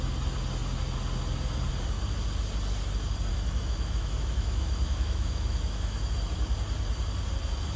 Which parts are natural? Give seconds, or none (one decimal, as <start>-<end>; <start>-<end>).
0.0-3.3; 6.1-7.8